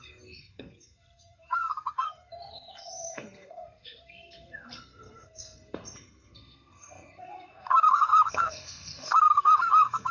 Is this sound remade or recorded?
remade